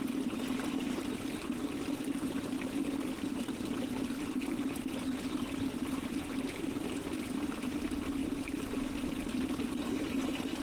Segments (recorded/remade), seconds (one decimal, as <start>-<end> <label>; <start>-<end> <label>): 0.0-10.6 recorded